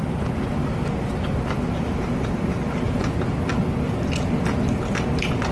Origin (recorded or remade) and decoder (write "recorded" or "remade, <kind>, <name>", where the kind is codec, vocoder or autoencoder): recorded